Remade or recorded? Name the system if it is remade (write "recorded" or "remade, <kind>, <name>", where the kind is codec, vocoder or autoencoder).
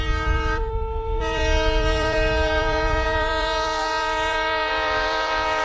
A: remade, vocoder, BigVGAN v2